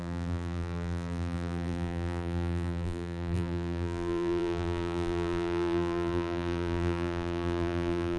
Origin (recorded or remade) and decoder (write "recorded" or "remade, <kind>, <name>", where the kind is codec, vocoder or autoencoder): remade, vocoder, BigVGAN v2